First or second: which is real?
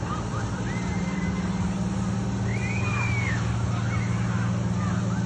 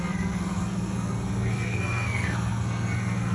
first